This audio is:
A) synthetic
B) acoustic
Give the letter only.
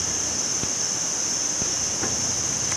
B